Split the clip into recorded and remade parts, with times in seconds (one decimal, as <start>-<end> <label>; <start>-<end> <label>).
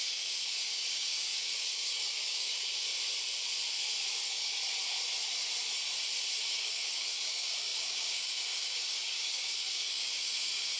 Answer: 0.0-2.9 remade; 2.9-4.1 recorded; 4.1-4.5 remade; 4.5-6.5 recorded; 6.5-10.8 remade